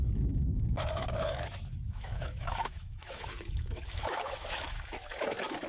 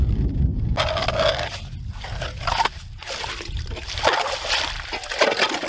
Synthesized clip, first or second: first